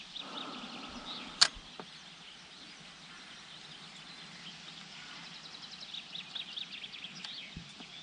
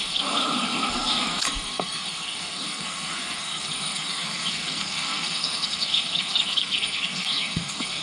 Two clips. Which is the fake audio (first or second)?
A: second